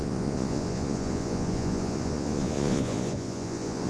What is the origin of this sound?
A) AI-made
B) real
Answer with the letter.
A